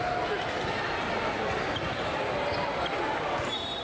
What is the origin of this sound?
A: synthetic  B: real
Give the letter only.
B